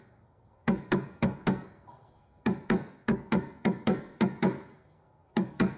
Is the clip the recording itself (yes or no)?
no